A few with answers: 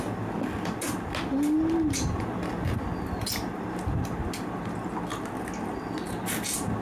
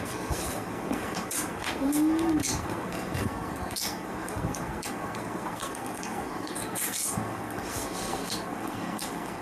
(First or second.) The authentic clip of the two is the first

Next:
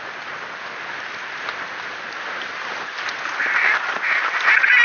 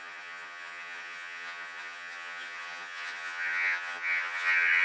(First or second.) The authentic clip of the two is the first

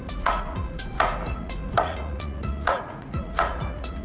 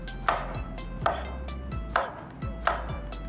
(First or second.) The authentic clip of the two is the second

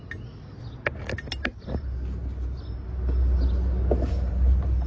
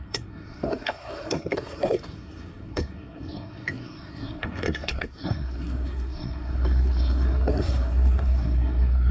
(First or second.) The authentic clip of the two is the first